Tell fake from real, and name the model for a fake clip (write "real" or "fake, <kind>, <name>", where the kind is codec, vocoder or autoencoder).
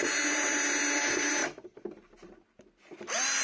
real